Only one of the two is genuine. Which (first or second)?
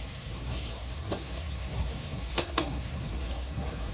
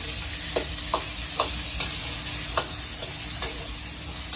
second